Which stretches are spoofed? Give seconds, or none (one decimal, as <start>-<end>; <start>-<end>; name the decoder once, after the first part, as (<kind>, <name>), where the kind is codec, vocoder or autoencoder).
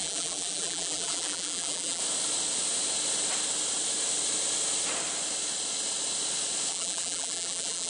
0.0-2.0 (vocoder, BigVGAN v2); 6.7-7.9